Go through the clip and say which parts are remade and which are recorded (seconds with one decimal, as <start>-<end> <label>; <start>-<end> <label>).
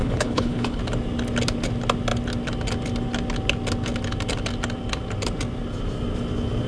0.0-0.8 remade; 0.8-6.7 recorded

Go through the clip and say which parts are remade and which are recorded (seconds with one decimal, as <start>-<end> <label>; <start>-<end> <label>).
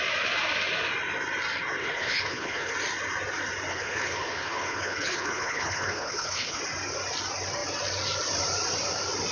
0.0-1.8 recorded; 1.8-2.7 remade; 2.7-3.7 recorded; 3.7-6.6 remade; 6.6-9.3 recorded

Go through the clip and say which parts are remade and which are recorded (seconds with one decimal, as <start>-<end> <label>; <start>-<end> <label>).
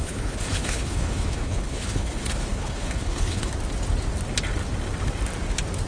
0.0-3.5 remade; 3.5-5.9 recorded